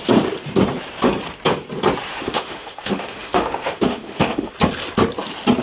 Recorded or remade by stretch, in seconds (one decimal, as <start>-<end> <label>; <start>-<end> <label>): 0.0-2.1 recorded; 2.1-4.5 remade; 4.5-5.6 recorded